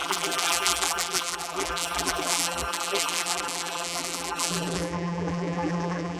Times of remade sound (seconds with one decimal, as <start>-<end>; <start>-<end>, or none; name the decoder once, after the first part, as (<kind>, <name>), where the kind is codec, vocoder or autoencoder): 0.0-6.2 (vocoder, BigVGAN v2)